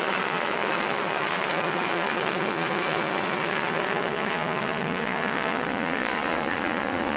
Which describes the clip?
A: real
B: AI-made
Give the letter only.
B